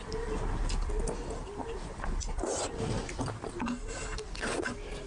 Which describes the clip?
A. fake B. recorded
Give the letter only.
B